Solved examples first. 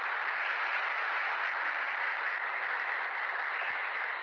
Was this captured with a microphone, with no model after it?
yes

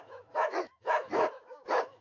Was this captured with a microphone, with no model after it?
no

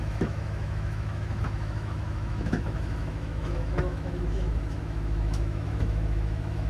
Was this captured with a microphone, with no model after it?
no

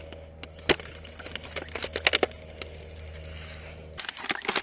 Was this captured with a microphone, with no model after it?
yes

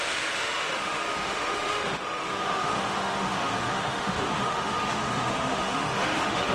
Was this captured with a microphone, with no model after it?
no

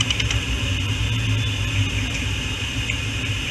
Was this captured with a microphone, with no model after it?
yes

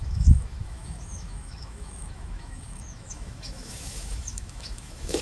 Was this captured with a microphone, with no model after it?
no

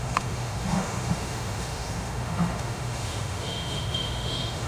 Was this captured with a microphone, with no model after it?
no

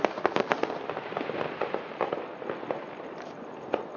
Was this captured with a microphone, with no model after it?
yes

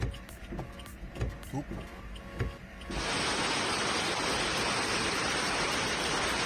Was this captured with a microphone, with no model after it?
yes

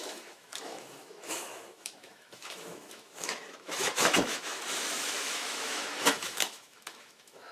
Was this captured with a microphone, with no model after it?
no